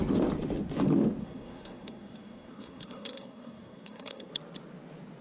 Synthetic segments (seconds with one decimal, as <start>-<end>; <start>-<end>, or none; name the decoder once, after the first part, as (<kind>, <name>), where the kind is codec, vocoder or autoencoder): 1.2-4.3 (codec, SNAC)